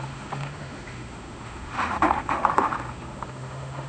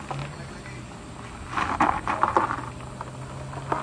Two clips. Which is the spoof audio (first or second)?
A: first